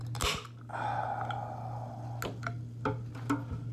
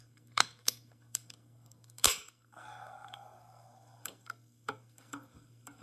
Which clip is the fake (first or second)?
second